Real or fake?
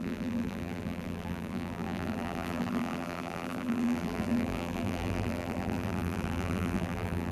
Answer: fake